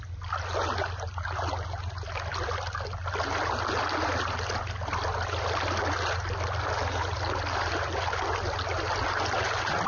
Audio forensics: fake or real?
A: real